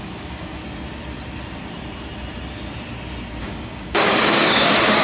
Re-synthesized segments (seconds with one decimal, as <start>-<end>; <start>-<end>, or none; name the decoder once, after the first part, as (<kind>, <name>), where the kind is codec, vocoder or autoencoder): 0.0-0.6 (codec, DAC); 3.4-5.0